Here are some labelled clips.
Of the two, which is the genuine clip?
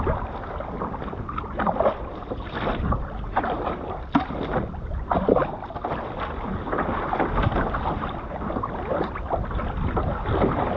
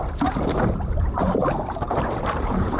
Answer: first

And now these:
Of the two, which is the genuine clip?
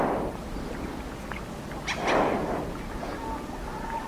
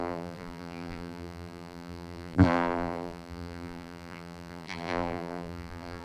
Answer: first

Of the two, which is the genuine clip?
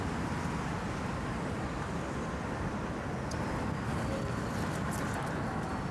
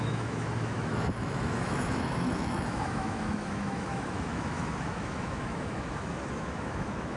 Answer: first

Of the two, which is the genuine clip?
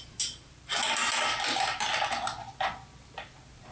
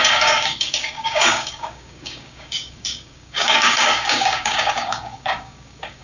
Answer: first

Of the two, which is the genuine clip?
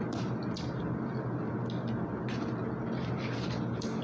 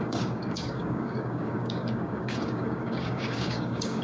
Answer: first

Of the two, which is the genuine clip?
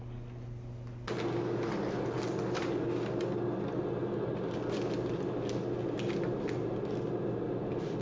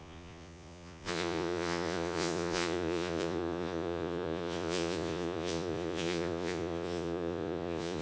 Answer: first